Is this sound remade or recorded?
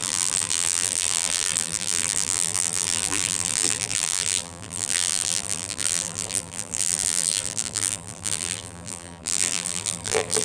remade